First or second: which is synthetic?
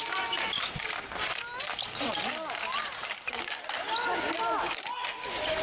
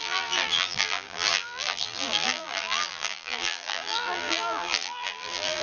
second